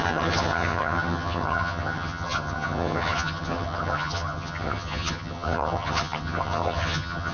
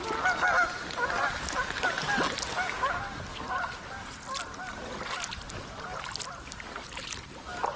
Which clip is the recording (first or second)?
second